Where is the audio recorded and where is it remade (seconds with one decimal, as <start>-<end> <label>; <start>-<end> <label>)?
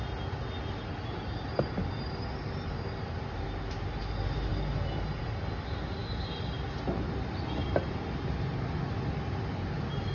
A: 0.0-10.1 recorded